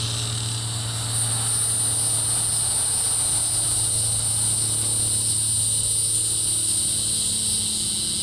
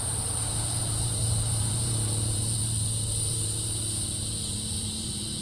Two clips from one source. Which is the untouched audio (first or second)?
first